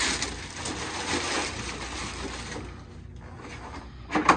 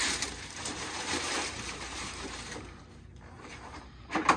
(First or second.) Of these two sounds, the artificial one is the second